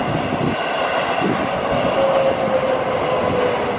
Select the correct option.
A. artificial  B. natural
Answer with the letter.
B